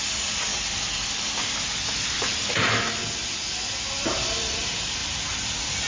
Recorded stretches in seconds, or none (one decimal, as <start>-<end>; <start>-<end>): 0.5-1.9; 3.0-4.6; 5.0-5.9

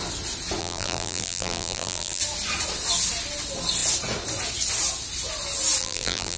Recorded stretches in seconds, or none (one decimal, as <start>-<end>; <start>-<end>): 0.0-0.6; 2.2-5.8

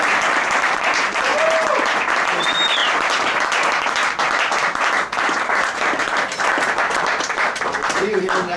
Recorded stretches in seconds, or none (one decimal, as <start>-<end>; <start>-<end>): 1.3-2.3; 2.8-7.0

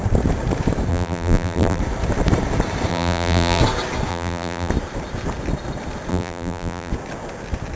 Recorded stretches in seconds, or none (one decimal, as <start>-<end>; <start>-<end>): 0.0-0.9; 1.8-2.9; 3.6-4.1; 4.7-6.1; 6.9-7.8

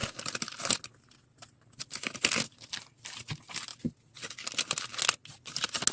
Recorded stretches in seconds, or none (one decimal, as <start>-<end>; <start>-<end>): 0.0-5.9

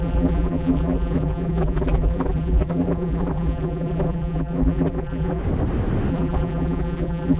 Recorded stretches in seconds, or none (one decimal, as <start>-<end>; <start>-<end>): 5.4-6.1

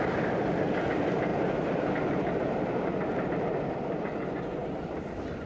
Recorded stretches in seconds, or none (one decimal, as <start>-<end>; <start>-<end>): 0.0-1.3; 1.9-2.4; 4.1-5.5